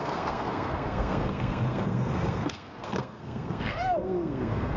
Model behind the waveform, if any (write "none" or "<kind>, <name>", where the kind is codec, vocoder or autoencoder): codec, SNAC